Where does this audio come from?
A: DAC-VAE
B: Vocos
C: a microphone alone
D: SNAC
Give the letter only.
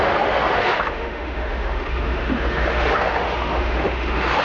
A